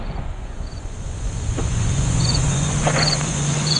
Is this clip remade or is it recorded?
remade